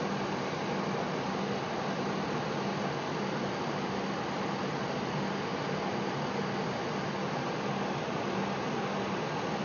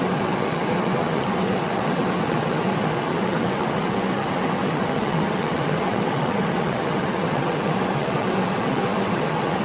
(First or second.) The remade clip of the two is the second